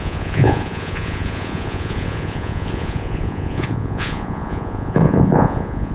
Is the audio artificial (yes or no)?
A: yes